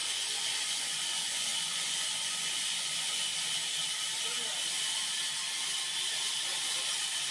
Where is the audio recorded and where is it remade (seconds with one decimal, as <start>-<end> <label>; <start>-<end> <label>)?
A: 0.0-3.3 remade; 3.3-7.3 recorded